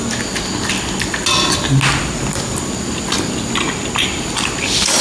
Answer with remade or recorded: recorded